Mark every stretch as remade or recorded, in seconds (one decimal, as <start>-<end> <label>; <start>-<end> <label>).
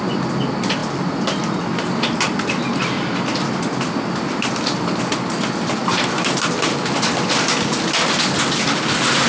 0.0-0.8 recorded; 0.8-5.0 remade; 5.0-9.3 recorded